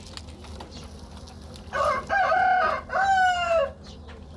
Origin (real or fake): real